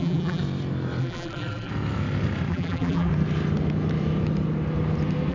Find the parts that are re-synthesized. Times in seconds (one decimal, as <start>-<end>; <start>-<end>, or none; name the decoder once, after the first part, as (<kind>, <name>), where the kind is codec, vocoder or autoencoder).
0.0-0.4 (vocoder, BigVGAN v2); 1.0-1.7; 2.5-3.1